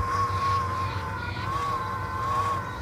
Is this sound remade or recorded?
remade